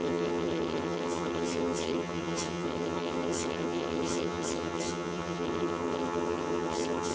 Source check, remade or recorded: remade